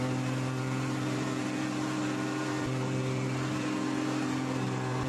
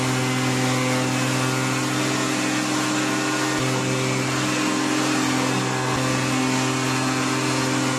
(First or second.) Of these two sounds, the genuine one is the second